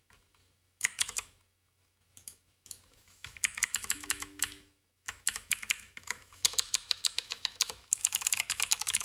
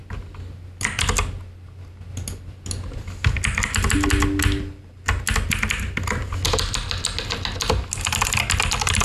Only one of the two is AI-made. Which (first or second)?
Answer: first